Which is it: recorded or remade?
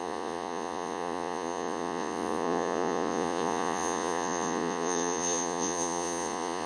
remade